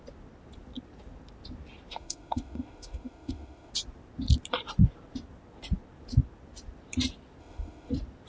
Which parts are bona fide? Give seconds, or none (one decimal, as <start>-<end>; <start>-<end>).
0.0-1.9; 3.7-7.4; 7.9-8.3